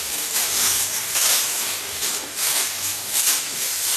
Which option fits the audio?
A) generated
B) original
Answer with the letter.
A